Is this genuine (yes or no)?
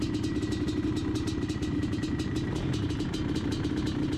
yes